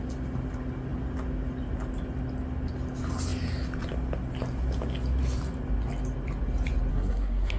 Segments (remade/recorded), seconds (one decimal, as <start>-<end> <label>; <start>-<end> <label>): 0.0-6.9 recorded; 6.9-7.6 remade